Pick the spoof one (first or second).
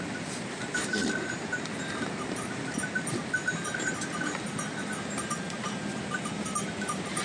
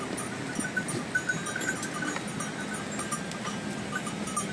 first